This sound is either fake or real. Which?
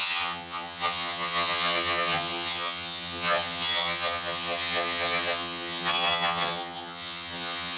fake